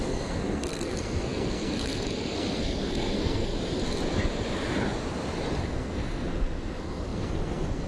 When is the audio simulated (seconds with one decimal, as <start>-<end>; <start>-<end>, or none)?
0.0-3.5; 5.6-7.9